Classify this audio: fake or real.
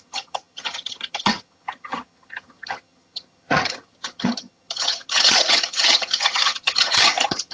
fake